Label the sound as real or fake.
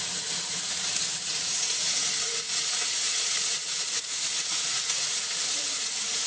fake